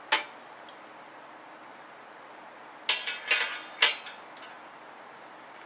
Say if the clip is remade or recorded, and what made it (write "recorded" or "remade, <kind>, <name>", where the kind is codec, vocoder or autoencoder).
recorded